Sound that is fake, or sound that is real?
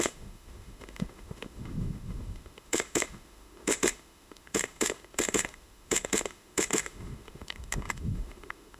fake